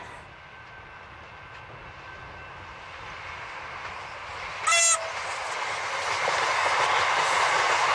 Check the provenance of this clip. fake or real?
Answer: real